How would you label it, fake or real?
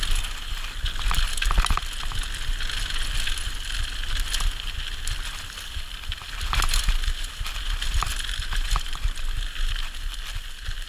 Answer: real